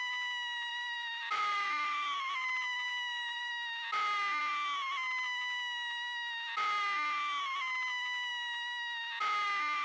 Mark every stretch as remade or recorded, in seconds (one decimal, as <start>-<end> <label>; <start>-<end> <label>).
0.0-0.7 recorded; 0.7-3.5 remade; 3.5-9.8 recorded